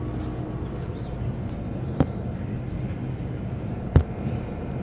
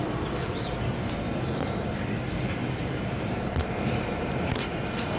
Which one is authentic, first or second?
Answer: first